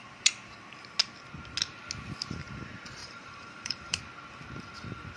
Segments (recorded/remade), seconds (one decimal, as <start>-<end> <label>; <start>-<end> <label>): 0.0-3.0 recorded; 3.0-4.0 remade; 4.0-5.2 recorded